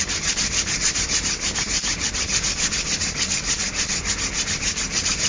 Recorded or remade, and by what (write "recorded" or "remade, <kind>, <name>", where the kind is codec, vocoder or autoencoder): remade, vocoder, BigVGAN v2